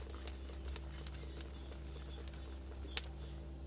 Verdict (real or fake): real